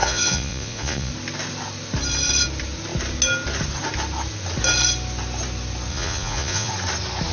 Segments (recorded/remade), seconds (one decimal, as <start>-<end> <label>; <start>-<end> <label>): 0.0-1.1 remade; 1.1-5.9 recorded; 5.9-6.7 remade; 6.7-7.3 recorded